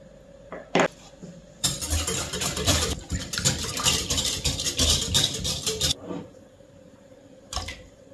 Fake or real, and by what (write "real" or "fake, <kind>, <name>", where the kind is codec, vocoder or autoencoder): fake, vocoder, BigVGAN v2